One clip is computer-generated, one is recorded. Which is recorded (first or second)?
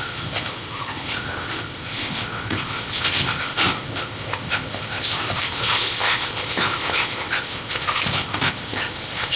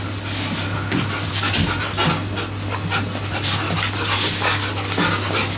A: second